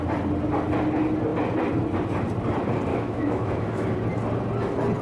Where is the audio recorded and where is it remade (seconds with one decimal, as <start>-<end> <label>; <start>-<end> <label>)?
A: 0.0-2.9 recorded; 2.9-3.9 remade; 3.9-5.0 recorded